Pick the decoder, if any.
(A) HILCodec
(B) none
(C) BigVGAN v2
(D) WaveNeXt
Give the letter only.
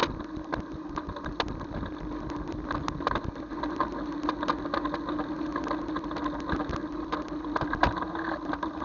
B